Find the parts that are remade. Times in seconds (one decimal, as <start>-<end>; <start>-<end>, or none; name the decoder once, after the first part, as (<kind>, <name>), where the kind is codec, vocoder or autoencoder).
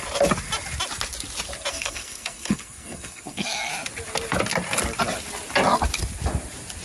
1.7-3.7 (codec, SNAC)